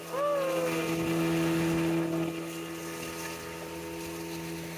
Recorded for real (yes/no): yes